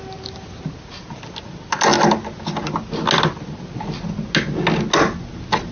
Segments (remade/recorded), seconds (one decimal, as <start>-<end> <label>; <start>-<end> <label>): 0.0-5.7 recorded